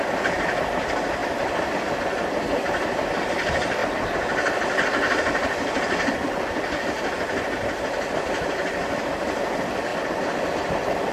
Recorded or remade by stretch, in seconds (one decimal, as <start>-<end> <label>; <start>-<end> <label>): 0.0-11.1 recorded

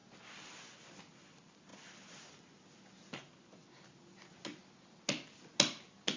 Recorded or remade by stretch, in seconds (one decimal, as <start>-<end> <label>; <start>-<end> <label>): 0.0-6.2 recorded

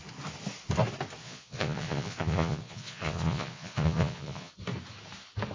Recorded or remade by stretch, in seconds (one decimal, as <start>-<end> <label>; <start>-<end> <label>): 0.0-1.2 recorded; 1.2-4.5 remade; 4.5-5.5 recorded

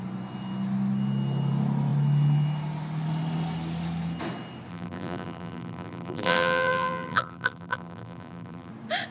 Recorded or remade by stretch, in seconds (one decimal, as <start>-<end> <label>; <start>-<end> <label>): 0.0-4.7 recorded; 4.7-8.7 remade; 8.7-9.1 recorded

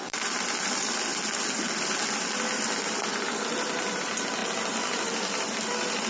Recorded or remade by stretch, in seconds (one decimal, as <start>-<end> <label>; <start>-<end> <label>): 0.0-1.1 remade; 1.1-2.1 recorded; 2.1-6.1 remade

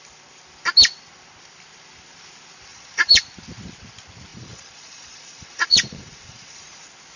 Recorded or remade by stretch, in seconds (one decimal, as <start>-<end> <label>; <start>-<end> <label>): 0.0-2.7 recorded; 2.7-3.2 remade; 3.2-4.3 recorded; 4.3-6.6 remade; 6.6-7.2 recorded